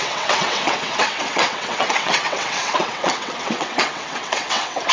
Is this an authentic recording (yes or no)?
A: no